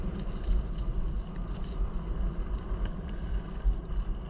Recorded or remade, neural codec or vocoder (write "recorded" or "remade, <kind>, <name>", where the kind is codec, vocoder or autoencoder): recorded